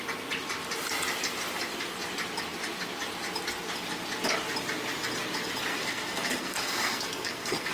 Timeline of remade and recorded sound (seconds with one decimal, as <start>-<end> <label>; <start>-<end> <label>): 0.0-5.7 recorded; 5.7-7.7 remade